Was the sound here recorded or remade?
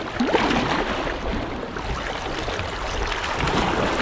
recorded